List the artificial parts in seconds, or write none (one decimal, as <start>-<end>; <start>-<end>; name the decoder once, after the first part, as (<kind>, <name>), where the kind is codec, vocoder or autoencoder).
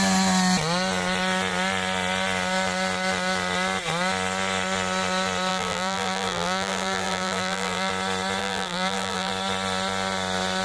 5.5-7.9 (vocoder, BigVGAN v2); 8.4-9.3